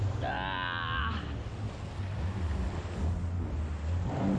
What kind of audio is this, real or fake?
real